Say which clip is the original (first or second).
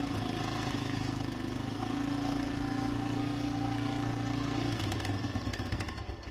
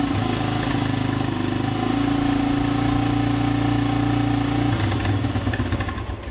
second